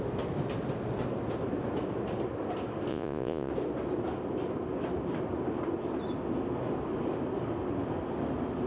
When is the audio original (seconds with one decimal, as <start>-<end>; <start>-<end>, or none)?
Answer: 0.0-2.9; 3.5-8.7